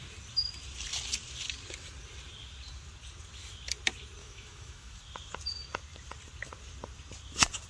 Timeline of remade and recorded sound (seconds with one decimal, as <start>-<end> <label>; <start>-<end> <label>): 0.0-4.2 recorded; 4.2-5.0 remade; 5.0-7.7 recorded